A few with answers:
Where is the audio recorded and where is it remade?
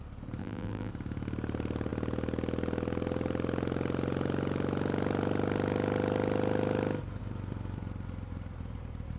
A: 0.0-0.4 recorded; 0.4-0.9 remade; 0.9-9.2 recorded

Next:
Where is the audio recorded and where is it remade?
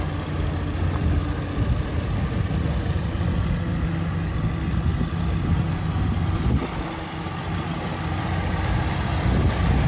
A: 0.0-9.9 recorded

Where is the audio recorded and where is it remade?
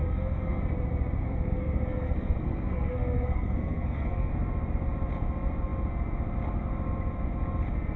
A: 0.0-0.6 remade; 0.6-1.2 recorded; 1.2-4.3 remade; 4.3-8.0 recorded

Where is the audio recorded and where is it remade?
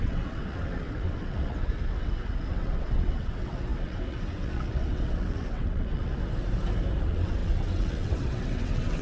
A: 0.0-6.2 remade; 6.2-7.0 recorded; 7.0-9.0 remade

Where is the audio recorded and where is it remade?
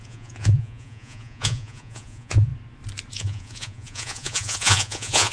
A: 0.0-2.5 remade; 2.5-3.1 recorded; 3.1-5.3 remade